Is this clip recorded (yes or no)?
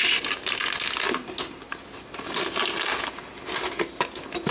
yes